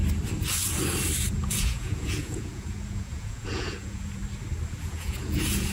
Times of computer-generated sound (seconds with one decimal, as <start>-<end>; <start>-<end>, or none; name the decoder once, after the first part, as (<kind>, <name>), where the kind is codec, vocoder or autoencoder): 1.3-4.2 (vocoder, Vocos); 4.7-5.7